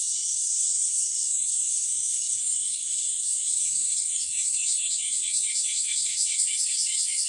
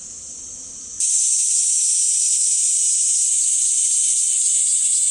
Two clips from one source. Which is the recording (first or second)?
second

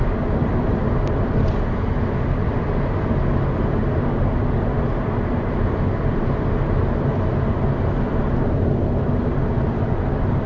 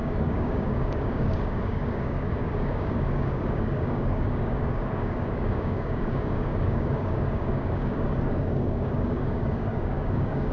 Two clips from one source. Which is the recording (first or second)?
first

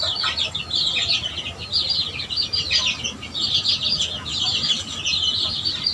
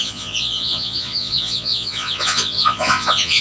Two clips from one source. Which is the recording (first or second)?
first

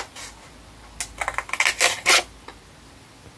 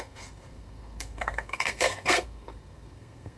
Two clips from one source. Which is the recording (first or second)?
first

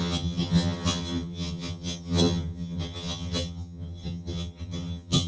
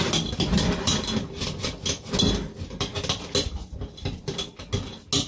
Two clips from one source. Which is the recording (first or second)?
second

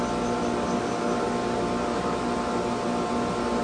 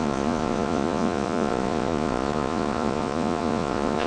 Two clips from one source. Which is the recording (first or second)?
first